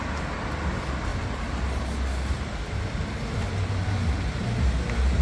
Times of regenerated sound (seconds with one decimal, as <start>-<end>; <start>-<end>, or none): none